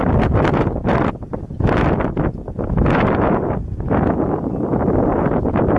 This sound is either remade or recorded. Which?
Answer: recorded